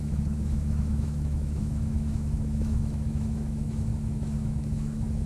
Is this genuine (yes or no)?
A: no